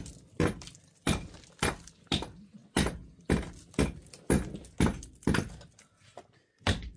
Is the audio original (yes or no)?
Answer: yes